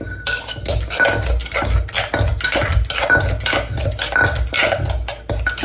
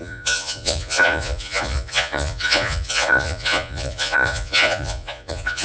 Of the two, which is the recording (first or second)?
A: first